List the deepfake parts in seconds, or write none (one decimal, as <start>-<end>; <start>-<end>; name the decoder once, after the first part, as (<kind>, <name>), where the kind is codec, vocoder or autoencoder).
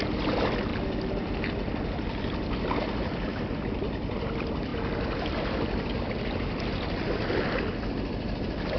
none